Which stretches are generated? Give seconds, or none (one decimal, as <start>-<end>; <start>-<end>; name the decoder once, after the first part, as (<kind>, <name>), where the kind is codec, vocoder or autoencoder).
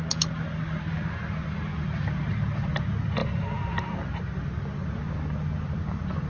none